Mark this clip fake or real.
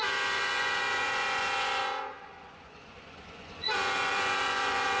fake